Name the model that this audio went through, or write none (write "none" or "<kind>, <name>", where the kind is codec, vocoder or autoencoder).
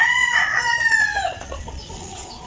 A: vocoder, Vocos